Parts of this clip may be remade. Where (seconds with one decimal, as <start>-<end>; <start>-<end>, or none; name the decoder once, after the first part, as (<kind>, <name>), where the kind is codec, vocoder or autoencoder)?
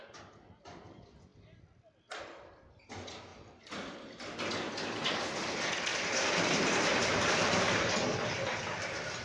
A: 5.9-7.8 (vocoder, BigVGAN v2)